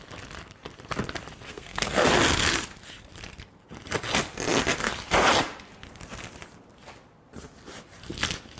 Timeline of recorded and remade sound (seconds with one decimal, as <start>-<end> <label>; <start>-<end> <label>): 0.0-1.5 recorded; 1.5-2.1 remade; 2.1-8.6 recorded